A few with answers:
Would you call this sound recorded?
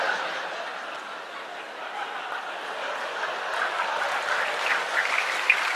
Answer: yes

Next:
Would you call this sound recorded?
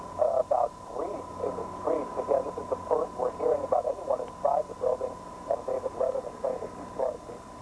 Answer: yes